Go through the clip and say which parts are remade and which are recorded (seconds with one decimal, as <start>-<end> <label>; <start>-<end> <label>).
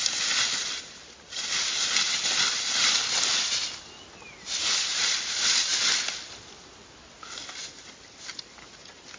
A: 0.0-9.2 recorded